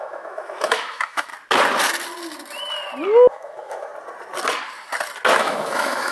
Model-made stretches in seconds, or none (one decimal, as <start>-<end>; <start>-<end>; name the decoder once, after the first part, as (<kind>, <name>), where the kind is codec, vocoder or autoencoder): 0.0-1.3 (autoencoder, DAC-VAE); 3.3-3.9; 5.4-6.1